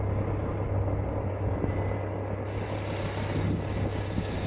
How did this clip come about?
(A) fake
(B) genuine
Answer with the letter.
B